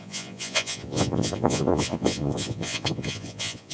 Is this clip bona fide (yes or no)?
no